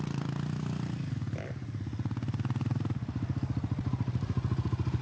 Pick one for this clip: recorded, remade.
recorded